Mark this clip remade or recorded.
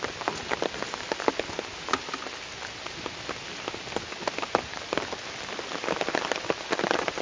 recorded